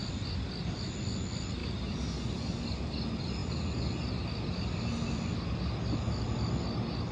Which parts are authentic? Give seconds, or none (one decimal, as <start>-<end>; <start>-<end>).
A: 0.0-7.1